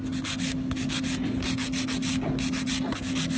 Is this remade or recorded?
recorded